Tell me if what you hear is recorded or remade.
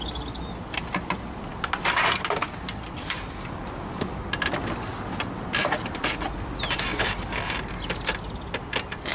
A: recorded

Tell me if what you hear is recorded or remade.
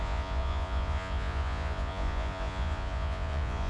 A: remade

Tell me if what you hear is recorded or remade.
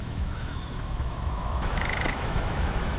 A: remade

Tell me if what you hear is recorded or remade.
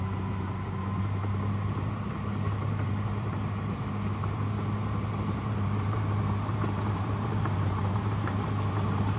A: remade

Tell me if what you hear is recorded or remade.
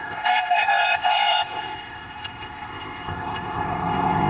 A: remade